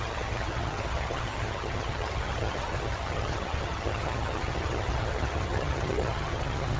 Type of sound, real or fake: fake